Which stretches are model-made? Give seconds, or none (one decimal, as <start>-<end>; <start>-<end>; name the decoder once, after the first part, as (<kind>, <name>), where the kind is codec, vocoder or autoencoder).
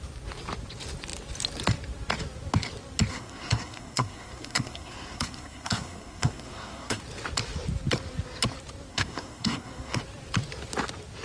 3.1-7.0 (codec, SNAC); 8.9-10.0